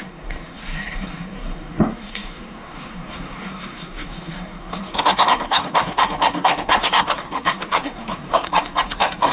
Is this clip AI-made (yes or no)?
yes